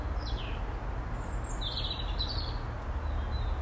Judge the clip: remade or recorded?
recorded